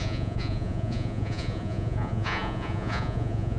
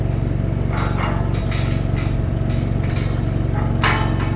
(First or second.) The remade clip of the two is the first